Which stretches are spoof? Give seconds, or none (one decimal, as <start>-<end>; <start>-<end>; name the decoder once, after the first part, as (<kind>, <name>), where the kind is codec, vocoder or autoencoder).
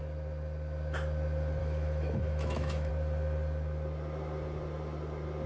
1.6-2.9 (autoencoder, DAC-VAE)